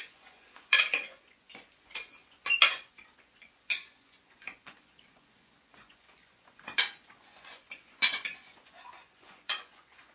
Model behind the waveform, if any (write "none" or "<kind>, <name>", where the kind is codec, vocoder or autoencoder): vocoder, Vocos